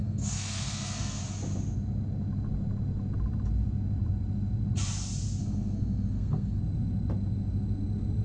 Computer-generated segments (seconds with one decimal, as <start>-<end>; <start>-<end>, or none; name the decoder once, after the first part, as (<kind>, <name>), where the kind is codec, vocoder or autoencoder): 0.0-1.2 (codec, SNAC); 5.4-6.6